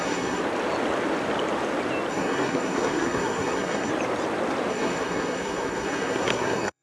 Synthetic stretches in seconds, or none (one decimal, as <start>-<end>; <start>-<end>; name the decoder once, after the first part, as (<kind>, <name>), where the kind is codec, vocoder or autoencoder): 0.0-0.4 (codec, SNAC); 2.1-3.9; 4.7-6.8